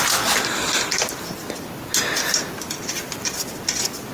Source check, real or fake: real